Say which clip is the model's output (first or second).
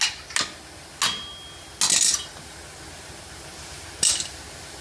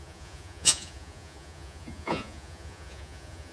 second